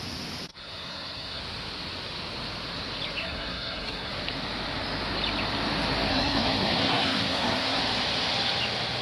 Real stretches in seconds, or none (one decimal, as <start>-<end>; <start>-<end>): 0.0-0.5; 1.4-3.2; 4.1-6.1; 7.8-9.0